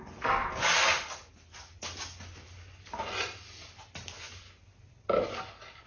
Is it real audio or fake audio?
real